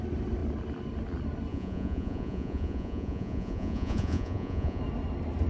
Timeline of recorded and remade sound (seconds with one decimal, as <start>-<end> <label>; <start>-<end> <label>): 0.0-1.5 recorded; 1.5-4.8 remade; 4.8-5.5 recorded